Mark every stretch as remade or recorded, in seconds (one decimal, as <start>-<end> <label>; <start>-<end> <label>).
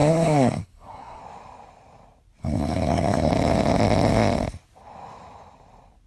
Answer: 0.0-1.2 remade; 1.2-2.4 recorded; 2.4-3.3 remade; 3.3-6.1 recorded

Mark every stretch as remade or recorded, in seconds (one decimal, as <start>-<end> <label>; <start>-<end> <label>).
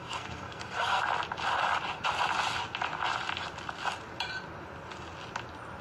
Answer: 0.0-1.0 remade; 1.0-5.8 recorded